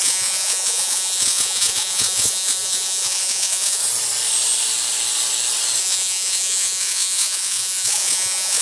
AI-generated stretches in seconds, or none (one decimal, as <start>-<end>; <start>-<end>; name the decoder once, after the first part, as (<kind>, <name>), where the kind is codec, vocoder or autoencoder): 0.0-3.8 (vocoder, Vocos); 5.8-8.6

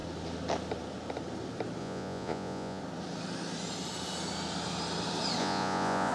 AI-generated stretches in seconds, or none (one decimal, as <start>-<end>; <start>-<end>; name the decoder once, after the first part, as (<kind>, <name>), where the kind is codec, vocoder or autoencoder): 1.8-2.8 (vocoder, Vocos); 5.4-6.1